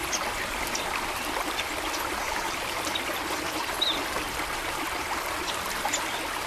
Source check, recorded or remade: recorded